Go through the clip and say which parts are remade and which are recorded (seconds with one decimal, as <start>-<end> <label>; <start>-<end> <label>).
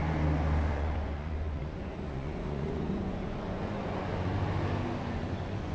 0.0-0.7 recorded; 0.7-4.3 remade; 4.3-5.0 recorded; 5.0-5.7 remade